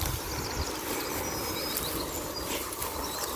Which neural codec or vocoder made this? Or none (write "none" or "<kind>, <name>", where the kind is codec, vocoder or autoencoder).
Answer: none